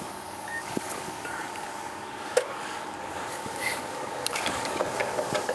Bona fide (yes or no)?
no